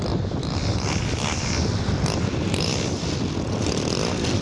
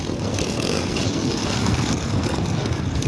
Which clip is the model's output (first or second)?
second